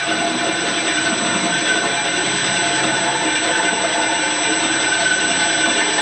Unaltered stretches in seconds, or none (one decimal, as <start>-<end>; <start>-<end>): 0.0-6.0

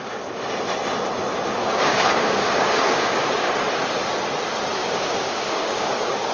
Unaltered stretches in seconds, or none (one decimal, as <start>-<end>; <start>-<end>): 0.0-1.6; 3.5-4.8